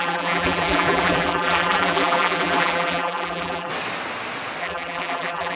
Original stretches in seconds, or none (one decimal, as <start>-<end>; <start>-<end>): 3.7-4.6